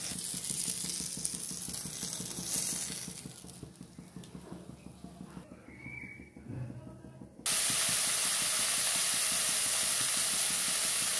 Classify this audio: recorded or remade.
recorded